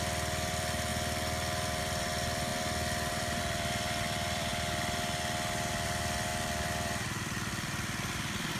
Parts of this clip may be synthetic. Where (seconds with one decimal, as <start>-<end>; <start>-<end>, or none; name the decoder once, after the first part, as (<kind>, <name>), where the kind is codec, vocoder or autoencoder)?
0.0-0.9 (vocoder, BigVGAN v2); 1.8-4.5; 5.7-8.6